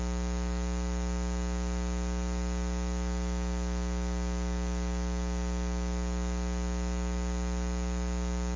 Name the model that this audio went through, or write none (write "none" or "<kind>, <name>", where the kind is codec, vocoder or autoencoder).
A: none